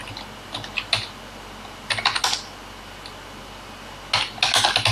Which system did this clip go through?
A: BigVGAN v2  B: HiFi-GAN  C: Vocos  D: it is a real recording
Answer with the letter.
D